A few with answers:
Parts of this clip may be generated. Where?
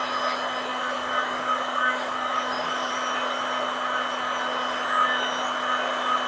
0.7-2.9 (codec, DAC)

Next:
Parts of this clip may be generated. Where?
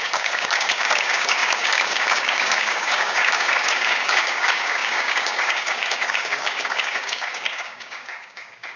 0.0-8.8 (codec, DAC)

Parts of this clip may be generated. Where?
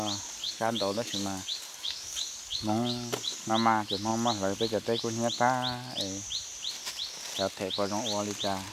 0.4-3.5 (codec, DAC)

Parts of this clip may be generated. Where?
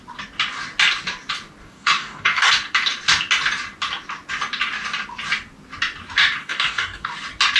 1.6-2.5 (codec, DAC); 6.4-7.1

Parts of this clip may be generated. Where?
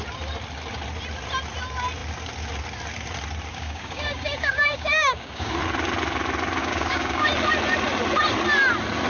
3.5-5.5 (codec, DAC); 6.6-7.3